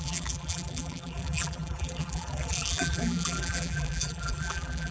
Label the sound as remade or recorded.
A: remade